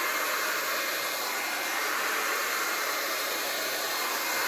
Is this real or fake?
fake